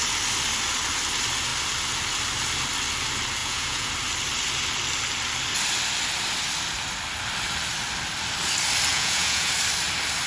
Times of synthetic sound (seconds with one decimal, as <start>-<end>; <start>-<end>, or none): 3.4-3.9; 8.9-9.5

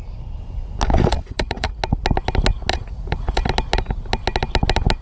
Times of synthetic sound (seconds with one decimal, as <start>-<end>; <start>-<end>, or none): 1.1-1.7; 2.7-3.5